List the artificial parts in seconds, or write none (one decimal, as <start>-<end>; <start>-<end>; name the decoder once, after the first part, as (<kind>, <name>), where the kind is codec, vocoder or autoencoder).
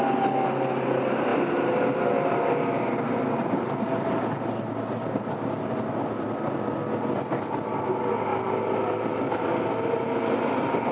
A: none